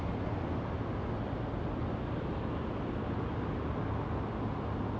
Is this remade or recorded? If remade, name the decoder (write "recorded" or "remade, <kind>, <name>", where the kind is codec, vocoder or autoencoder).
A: recorded